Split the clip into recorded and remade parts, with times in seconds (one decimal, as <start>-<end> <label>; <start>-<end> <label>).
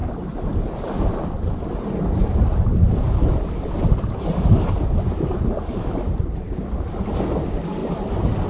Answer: 0.0-2.2 recorded; 2.2-6.6 remade; 6.6-7.8 recorded; 7.8-8.5 remade